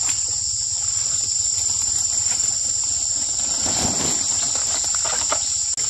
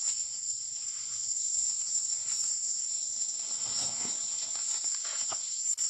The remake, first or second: second